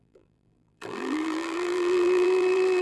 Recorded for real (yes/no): no